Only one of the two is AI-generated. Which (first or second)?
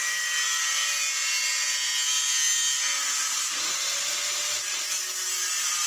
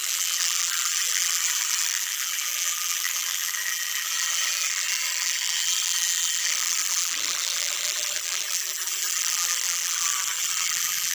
second